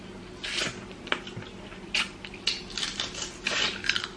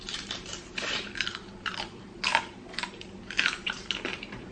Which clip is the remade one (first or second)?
second